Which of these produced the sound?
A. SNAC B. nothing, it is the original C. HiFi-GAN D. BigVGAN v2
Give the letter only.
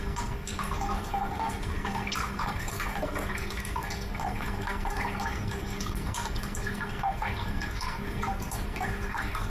A